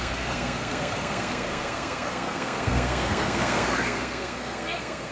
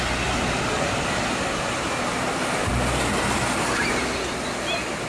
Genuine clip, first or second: second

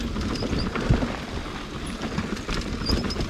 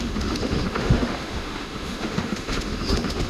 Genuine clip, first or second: first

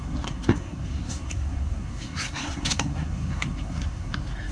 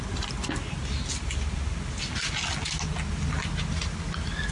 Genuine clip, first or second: second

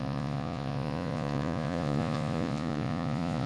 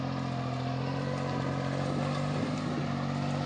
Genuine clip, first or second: second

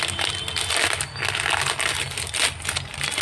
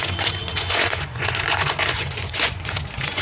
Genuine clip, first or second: first